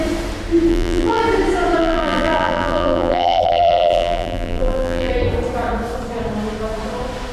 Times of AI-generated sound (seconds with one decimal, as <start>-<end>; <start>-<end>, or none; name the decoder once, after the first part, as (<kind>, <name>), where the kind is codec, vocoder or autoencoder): 0.7-1.2 (vocoder, BigVGAN v2); 1.8-5.1